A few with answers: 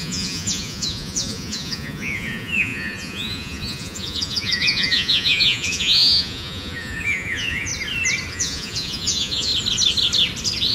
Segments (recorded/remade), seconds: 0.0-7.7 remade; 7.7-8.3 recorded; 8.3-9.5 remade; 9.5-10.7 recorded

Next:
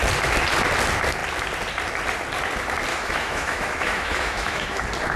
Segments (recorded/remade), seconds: 0.0-2.9 recorded; 2.9-4.8 remade; 4.8-5.2 recorded

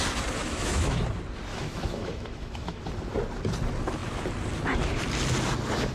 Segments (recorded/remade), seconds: 0.0-0.4 recorded; 0.4-1.0 remade; 1.0-1.5 recorded; 1.5-2.8 remade; 2.8-5.9 recorded

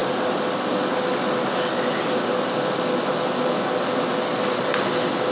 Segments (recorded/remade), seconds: 0.0-5.3 recorded